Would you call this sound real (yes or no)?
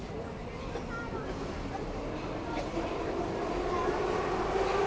yes